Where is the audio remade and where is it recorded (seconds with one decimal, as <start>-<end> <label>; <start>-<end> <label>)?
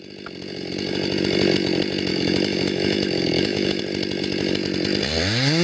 0.0-2.1 recorded; 2.1-3.8 remade; 3.8-5.6 recorded